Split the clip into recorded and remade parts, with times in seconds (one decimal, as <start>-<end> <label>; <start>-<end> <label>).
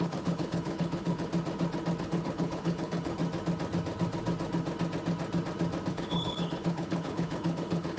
0.0-1.3 remade; 1.3-2.0 recorded; 2.0-3.2 remade; 3.2-5.9 recorded; 5.9-8.0 remade